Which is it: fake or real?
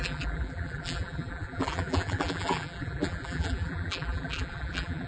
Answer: fake